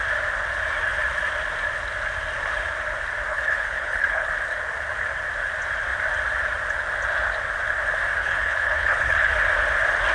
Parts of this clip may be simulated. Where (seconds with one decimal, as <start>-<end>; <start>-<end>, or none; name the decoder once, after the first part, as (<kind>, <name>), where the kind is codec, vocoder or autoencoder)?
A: 3.3-4.3 (codec, HILCodec); 8.2-9.3